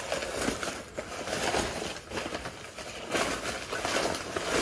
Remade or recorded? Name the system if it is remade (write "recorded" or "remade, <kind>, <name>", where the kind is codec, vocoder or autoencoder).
recorded